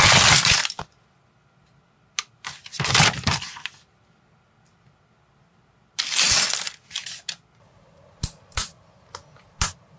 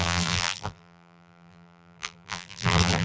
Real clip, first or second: first